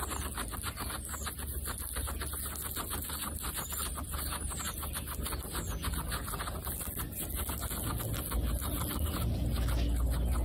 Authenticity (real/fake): real